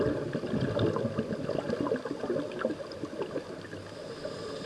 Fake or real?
real